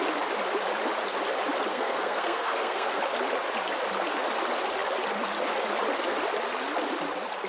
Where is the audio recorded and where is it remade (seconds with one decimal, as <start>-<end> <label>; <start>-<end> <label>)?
0.0-1.7 recorded; 1.7-3.0 remade; 3.0-7.5 recorded